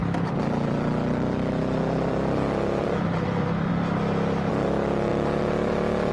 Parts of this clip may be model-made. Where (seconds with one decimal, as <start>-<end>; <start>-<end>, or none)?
0.0-3.7